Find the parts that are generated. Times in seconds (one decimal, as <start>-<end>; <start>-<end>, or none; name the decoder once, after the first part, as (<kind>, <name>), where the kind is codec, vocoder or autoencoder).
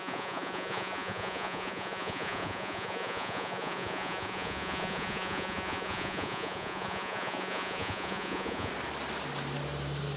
0.0-8.7 (vocoder, Vocos)